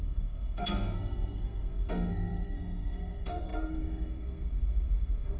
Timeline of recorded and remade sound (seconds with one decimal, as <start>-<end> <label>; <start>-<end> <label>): 0.0-5.4 remade